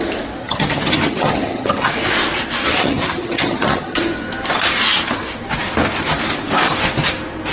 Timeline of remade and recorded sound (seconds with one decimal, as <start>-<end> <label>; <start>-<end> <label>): 0.0-0.4 recorded; 0.4-1.9 remade; 1.9-2.6 recorded; 2.6-4.0 remade; 4.0-7.5 recorded